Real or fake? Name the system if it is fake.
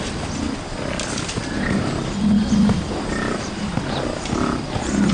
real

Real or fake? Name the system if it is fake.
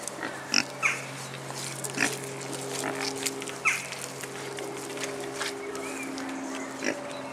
real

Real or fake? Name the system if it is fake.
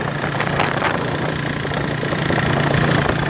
fake, vocoder, BigVGAN v2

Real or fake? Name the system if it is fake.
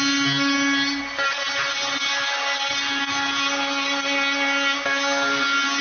real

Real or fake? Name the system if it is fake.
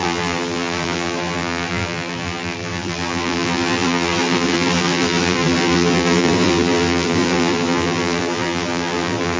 fake, vocoder, BigVGAN v2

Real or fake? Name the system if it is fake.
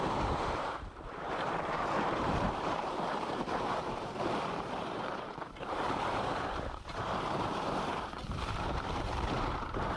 fake, vocoder, BigVGAN v2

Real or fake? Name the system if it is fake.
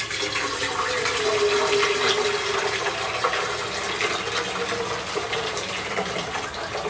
real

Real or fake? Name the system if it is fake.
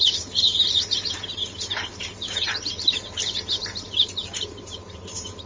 fake, vocoder, BigVGAN v2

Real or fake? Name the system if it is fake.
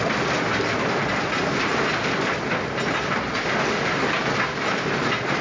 real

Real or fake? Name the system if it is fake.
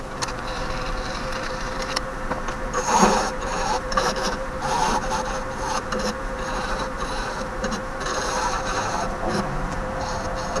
fake, vocoder, BigVGAN v2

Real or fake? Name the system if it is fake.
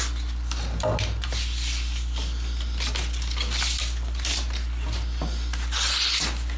real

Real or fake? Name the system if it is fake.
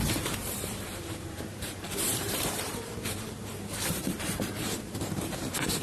fake, vocoder, BigVGAN v2